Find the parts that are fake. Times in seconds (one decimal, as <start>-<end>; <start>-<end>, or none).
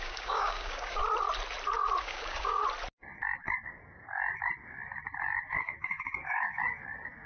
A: 0.0-1.0; 2.0-2.6; 5.4-6.6